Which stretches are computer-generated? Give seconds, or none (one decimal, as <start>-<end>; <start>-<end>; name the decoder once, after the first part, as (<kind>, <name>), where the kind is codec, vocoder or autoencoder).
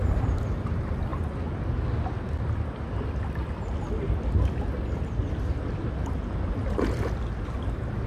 none